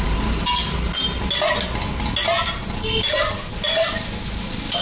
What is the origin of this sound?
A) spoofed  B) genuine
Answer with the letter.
B